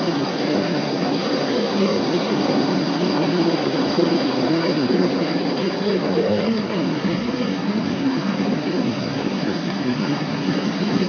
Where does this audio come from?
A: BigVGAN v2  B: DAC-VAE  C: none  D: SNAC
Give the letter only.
D